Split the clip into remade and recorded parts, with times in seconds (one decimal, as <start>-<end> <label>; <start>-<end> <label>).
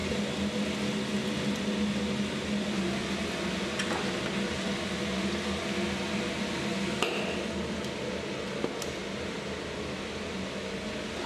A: 0.0-11.3 recorded